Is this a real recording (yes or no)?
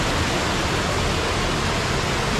yes